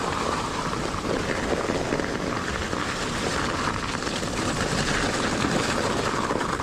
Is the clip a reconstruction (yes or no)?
no